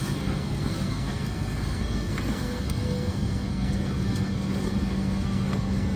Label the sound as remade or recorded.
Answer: remade